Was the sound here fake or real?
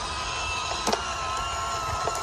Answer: real